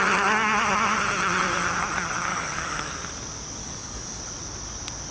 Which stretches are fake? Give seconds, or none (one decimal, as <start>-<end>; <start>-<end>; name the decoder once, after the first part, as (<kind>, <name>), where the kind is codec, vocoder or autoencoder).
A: 2.3-2.9 (codec, DAC); 3.6-4.2